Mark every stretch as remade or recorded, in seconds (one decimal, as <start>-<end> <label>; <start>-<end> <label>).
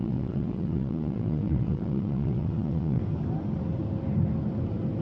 0.0-3.0 remade; 3.0-5.0 recorded